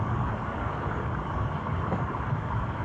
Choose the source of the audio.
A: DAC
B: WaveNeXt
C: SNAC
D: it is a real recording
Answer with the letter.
A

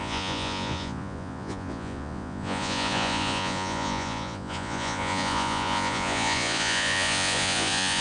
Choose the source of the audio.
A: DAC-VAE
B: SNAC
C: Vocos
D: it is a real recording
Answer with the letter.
C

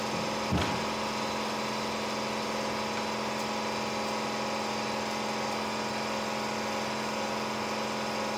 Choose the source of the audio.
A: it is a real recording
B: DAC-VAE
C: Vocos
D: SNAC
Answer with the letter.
A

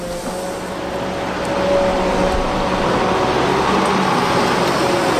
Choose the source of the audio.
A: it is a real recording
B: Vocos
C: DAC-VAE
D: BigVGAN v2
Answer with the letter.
A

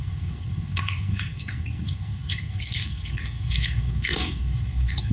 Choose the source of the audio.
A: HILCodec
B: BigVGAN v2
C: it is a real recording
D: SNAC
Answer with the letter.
D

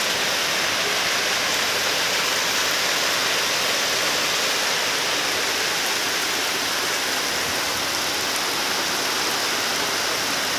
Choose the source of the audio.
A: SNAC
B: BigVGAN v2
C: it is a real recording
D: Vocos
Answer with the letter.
C